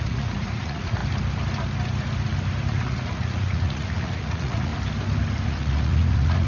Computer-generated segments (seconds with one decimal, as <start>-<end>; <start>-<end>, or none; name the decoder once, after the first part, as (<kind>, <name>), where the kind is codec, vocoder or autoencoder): 0.0-1.0 (vocoder, Vocos); 2.7-4.7; 5.5-6.5

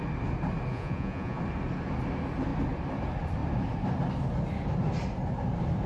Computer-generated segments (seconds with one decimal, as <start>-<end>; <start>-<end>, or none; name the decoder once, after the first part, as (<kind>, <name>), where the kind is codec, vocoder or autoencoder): 0.7-1.4 (vocoder, Vocos)

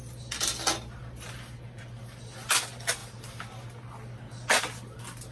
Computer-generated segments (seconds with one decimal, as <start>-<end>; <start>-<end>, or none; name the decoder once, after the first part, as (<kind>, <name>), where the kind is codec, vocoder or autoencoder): none

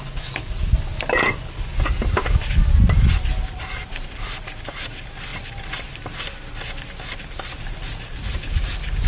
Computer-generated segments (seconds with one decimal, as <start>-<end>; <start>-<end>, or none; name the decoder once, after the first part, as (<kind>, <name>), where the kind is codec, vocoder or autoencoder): none

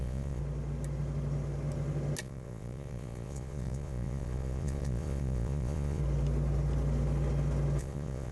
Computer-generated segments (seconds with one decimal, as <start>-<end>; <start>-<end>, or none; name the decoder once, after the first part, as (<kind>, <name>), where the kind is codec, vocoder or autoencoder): 0.0-0.4 (vocoder, Vocos); 2.2-6.0; 7.8-8.3

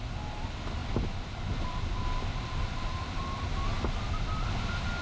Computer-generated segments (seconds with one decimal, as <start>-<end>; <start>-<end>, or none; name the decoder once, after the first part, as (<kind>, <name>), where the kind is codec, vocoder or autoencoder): none